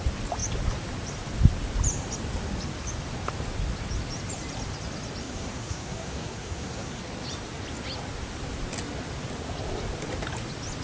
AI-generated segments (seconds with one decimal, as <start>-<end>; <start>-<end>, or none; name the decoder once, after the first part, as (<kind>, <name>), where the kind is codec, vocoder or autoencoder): 5.2-7.0 (codec, SNAC)